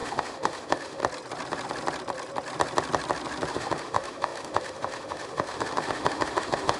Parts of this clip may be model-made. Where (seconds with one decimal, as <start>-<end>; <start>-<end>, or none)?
0.0-1.0; 3.5-6.8